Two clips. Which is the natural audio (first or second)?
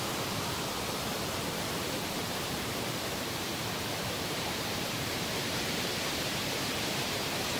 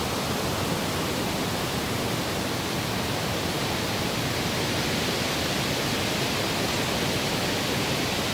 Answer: second